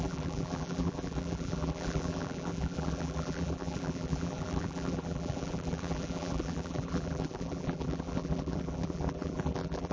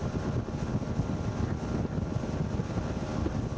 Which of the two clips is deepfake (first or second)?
first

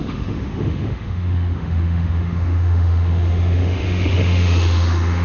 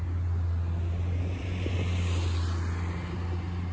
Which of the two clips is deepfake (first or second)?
first